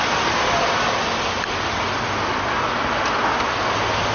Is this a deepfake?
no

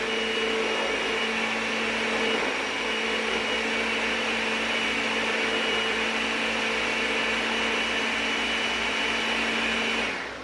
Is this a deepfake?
no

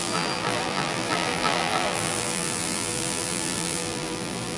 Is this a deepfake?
yes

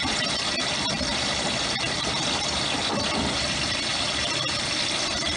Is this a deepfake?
yes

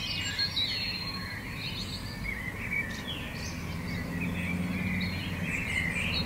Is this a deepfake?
no